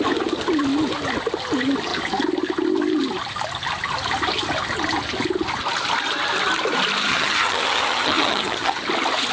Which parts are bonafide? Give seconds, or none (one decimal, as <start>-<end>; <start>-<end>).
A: 0.0-7.1; 8.8-9.3